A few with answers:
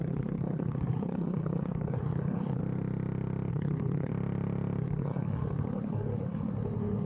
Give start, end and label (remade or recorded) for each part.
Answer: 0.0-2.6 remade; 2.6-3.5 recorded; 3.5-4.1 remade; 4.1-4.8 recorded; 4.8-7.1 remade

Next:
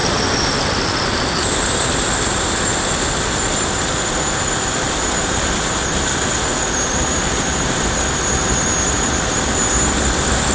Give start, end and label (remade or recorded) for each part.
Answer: 0.0-10.5 recorded

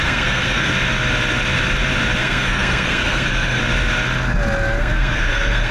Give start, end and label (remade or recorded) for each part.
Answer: 0.0-0.7 remade; 0.7-2.2 recorded; 2.2-3.6 remade; 3.6-4.8 recorded; 4.8-5.7 remade